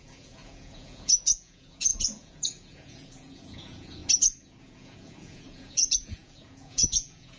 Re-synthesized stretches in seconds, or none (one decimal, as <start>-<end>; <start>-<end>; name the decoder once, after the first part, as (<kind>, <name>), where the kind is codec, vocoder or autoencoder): 0.0-4.0 (vocoder, Vocos); 4.6-7.4